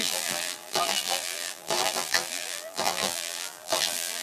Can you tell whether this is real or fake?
fake